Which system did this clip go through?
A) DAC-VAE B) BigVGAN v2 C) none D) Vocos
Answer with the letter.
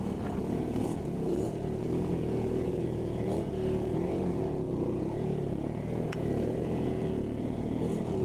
D